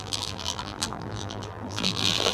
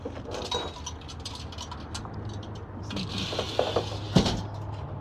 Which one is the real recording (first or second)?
second